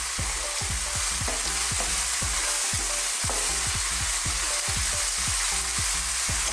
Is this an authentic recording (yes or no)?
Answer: yes